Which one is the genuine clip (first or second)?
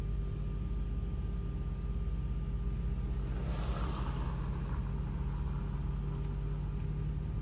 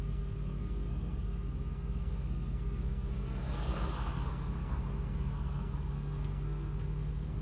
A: first